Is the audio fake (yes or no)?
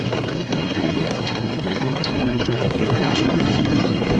yes